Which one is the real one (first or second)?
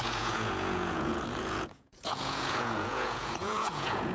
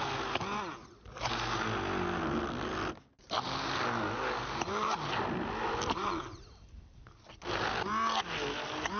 second